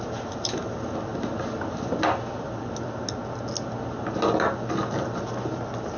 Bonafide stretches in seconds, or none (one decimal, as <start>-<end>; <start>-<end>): 0.0-6.0